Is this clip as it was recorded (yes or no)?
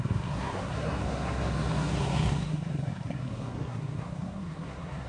no